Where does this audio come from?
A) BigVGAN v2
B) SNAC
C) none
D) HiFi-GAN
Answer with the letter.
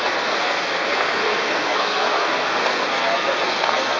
B